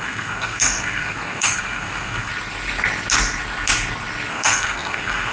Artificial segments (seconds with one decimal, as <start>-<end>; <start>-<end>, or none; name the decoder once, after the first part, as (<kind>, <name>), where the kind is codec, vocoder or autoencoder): 0.0-2.3 (codec, SNAC); 4.3-5.3